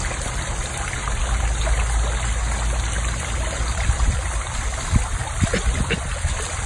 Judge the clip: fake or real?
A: real